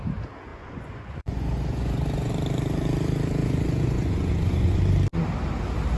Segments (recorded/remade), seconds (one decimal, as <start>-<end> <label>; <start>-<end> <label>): 0.0-0.5 recorded; 0.5-2.3 remade; 2.3-3.4 recorded; 3.4-4.8 remade; 4.8-6.0 recorded